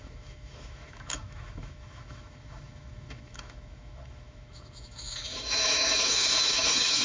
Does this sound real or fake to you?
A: fake